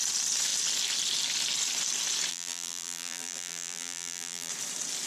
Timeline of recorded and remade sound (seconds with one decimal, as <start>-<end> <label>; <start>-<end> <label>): 0.0-2.3 recorded; 2.3-4.5 remade; 4.5-5.1 recorded